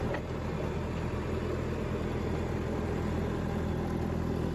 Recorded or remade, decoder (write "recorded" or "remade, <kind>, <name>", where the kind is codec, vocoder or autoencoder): recorded